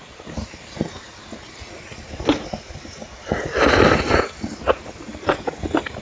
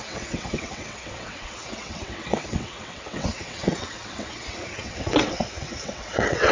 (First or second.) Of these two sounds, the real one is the first